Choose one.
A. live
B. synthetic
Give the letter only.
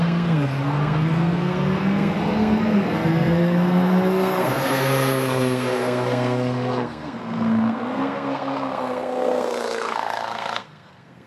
B